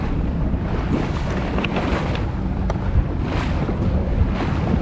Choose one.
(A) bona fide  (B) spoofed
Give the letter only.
A